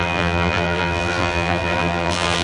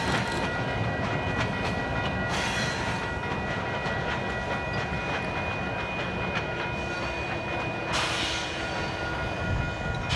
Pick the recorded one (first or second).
second